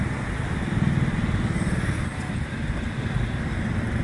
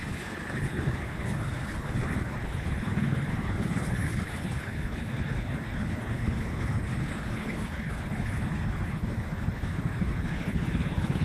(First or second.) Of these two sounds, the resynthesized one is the second